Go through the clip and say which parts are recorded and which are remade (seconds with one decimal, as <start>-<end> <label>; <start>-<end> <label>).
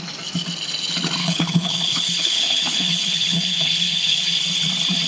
0.0-1.2 recorded; 1.2-4.3 remade; 4.3-5.1 recorded